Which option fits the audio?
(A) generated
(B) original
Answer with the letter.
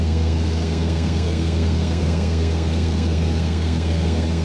A